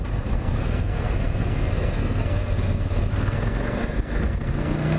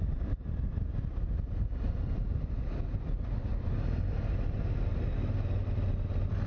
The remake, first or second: first